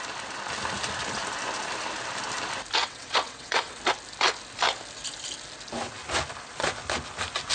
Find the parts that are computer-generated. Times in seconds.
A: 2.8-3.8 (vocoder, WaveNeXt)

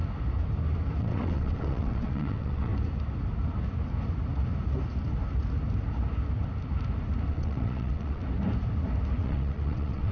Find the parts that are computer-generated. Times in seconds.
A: 1.0-2.7 (vocoder, WaveNeXt); 7.3-8.2; 9.2-10.1

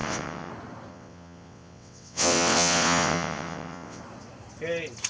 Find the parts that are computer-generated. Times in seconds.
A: 0.0-0.5 (vocoder, WaveNeXt); 0.9-4.0